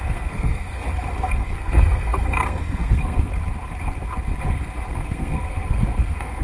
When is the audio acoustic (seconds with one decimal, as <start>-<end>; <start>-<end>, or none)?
0.8-1.4; 3.3-4.9